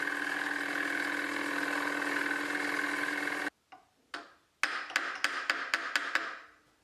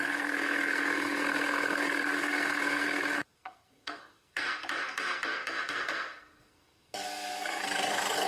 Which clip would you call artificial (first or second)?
second